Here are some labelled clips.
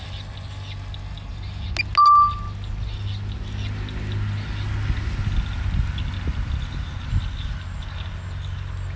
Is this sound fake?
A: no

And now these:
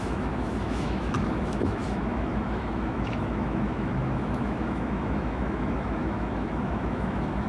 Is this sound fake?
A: yes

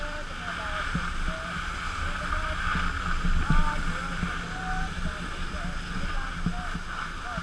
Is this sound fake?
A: no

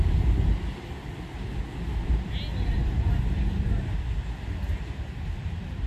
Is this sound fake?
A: no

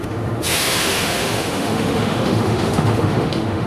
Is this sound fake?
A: yes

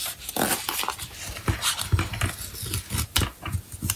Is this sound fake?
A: no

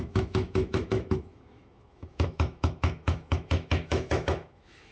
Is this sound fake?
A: yes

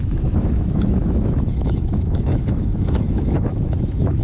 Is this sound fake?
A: yes